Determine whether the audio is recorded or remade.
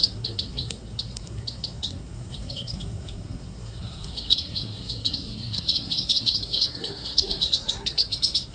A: remade